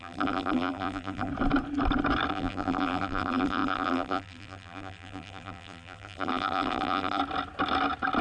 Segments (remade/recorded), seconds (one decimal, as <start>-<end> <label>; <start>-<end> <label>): 0.0-1.3 remade; 1.3-2.3 recorded; 2.3-7.2 remade; 7.2-8.2 recorded

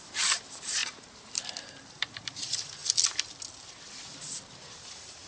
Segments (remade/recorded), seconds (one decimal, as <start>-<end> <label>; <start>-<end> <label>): 0.0-2.8 remade; 2.8-3.9 recorded; 3.9-5.3 remade

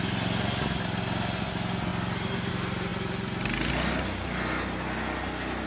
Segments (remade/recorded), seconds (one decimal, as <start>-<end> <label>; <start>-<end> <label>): 0.0-1.9 recorded; 1.9-2.5 remade; 2.5-5.7 recorded

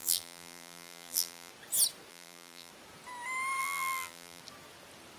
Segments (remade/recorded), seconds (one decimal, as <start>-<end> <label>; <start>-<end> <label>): 0.0-1.5 remade; 1.5-2.1 recorded; 2.1-2.7 remade; 2.7-3.6 recorded; 3.6-4.4 remade; 4.4-5.2 recorded

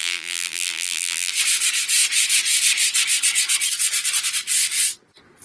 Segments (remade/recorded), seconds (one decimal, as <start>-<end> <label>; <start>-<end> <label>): 0.0-1.3 remade; 1.3-5.4 recorded

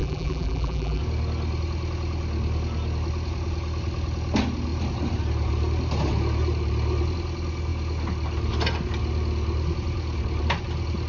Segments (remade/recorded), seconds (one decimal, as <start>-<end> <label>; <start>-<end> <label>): 0.0-1.0 remade; 1.0-11.1 recorded

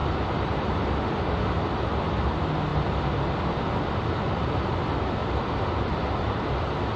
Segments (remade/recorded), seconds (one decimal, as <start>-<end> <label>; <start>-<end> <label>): 0.0-1.4 remade; 1.4-5.2 recorded; 5.2-6.4 remade; 6.4-7.0 recorded